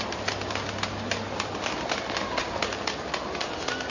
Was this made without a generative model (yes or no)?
yes